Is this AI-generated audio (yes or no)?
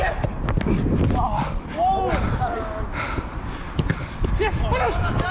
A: no